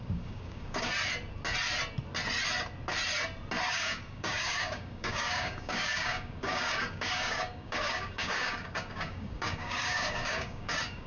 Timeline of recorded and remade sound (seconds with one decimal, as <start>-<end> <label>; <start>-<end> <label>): 0.0-0.9 remade; 0.9-3.7 recorded; 3.7-11.1 remade